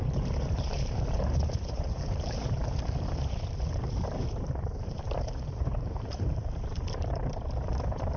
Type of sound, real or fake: fake